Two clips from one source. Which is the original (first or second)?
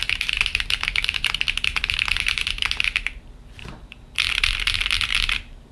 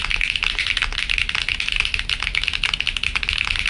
second